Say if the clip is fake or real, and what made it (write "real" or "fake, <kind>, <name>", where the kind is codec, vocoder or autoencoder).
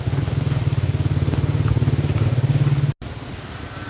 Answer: real